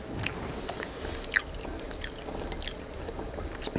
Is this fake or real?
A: real